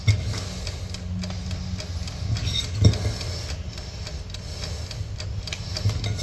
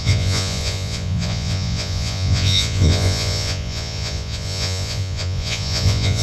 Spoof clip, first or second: second